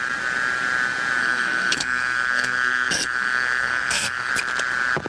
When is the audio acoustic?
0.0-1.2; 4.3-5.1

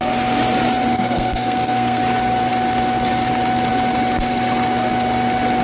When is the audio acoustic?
0.0-0.9; 2.0-5.6

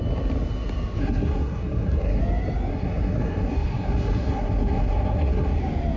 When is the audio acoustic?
0.0-1.0; 2.2-2.7; 5.6-6.0